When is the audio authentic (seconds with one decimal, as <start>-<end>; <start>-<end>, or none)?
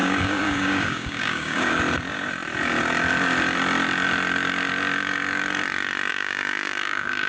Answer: 1.8-6.1